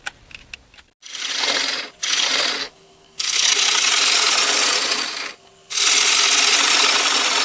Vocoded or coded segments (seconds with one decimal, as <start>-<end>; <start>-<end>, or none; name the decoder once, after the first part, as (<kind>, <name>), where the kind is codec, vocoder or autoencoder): 2.6-3.5 (codec, SNAC)